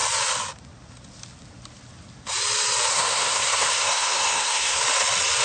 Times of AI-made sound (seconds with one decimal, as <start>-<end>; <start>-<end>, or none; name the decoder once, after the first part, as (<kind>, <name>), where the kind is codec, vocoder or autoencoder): 2.9-4.8 (codec, SNAC)